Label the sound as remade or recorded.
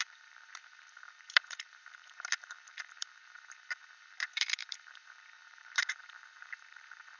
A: remade